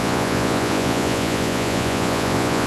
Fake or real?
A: fake